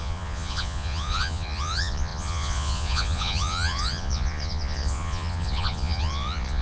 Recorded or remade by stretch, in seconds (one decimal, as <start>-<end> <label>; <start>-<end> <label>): 0.0-6.6 remade